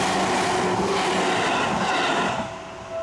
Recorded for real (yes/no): yes